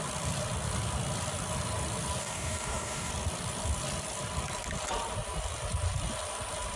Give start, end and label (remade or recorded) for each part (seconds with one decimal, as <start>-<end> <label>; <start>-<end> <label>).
0.0-2.2 recorded; 2.2-3.1 remade; 3.1-6.8 recorded